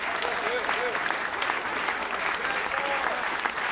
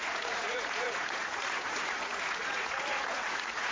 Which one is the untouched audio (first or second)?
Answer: first